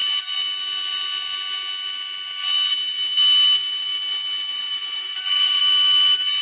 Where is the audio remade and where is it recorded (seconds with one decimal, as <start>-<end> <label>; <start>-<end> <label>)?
0.0-4.5 recorded; 4.5-5.6 remade; 5.6-6.4 recorded